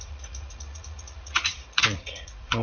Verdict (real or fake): fake